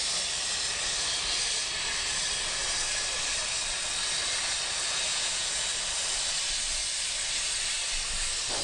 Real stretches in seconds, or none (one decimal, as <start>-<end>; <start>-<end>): 0.0-5.1; 5.6-8.6

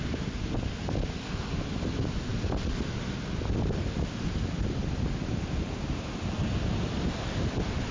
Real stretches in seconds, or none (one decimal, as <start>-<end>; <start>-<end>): 0.0-7.9

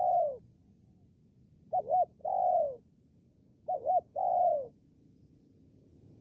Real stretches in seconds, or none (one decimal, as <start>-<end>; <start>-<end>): 0.0-1.2; 1.8-2.2

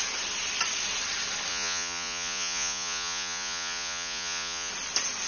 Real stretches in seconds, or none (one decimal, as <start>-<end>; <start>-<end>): 0.0-1.5; 4.7-5.3

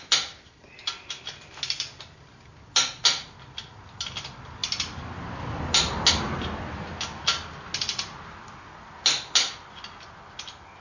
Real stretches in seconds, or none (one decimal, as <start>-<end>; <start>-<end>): 0.0-10.8

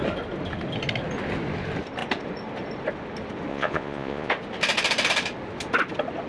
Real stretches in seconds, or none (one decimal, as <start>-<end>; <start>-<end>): 0.0-3.5; 4.3-6.3

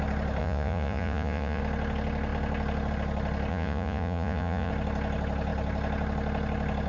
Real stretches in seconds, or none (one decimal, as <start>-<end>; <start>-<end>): 0.0-0.4; 1.6-3.5; 4.7-6.9

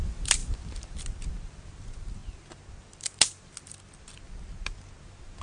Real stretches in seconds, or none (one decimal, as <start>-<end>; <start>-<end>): 0.0-5.4